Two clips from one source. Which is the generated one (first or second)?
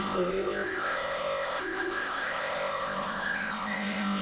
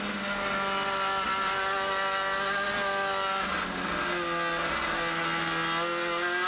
first